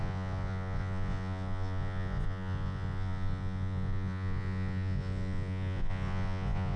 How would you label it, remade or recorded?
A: remade